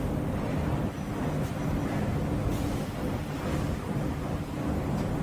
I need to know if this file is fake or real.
real